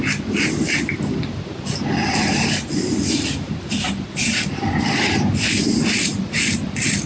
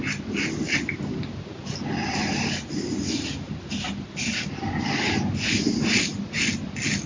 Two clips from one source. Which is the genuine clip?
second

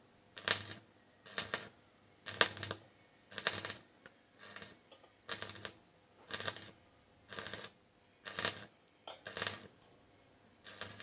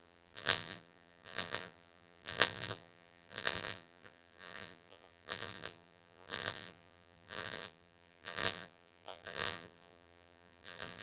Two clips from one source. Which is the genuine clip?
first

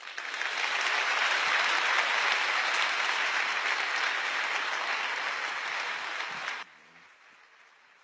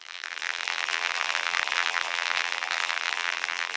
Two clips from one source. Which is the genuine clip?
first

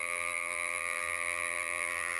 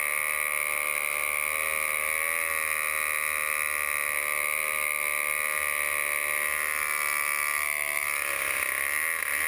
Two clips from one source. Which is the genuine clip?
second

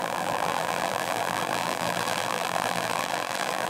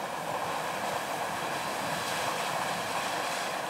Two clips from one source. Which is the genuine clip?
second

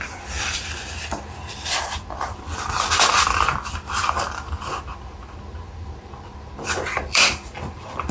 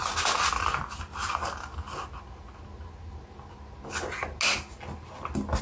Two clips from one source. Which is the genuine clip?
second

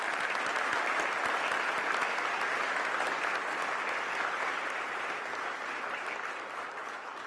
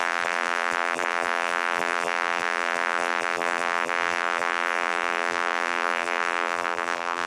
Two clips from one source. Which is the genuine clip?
first